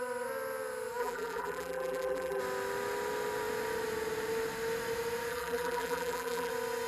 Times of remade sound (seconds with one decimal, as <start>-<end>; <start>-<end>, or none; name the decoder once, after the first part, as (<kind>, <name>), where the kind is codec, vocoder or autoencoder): 1.0-2.4 (vocoder, BigVGAN v2); 5.3-6.5